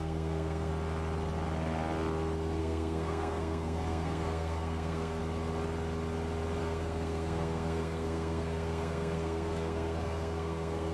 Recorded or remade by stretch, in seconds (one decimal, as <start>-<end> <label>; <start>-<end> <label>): 0.0-0.7 remade; 0.7-2.6 recorded; 2.6-5.2 remade; 5.2-6.6 recorded; 6.6-10.9 remade